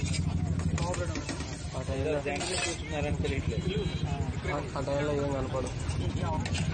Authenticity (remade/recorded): recorded